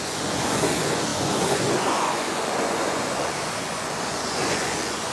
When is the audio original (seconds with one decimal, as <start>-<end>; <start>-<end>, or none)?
none